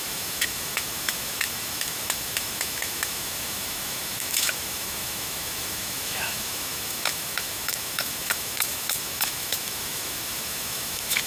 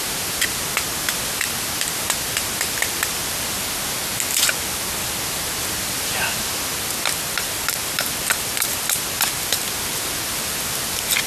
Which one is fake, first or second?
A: first